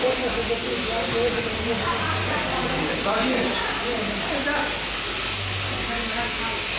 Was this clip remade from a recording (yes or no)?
no